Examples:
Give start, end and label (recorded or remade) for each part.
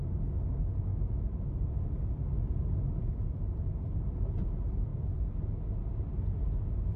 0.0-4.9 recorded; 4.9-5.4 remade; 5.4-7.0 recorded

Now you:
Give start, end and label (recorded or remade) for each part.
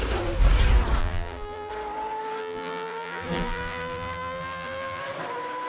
0.0-1.0 recorded; 1.0-1.7 remade; 1.7-2.4 recorded; 2.4-5.0 remade; 5.0-5.7 recorded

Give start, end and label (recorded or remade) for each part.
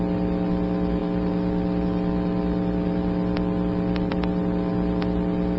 0.0-1.0 recorded; 1.0-4.1 remade; 4.1-5.6 recorded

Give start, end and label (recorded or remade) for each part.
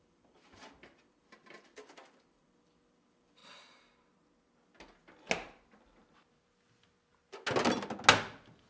0.0-3.4 remade; 3.4-8.7 recorded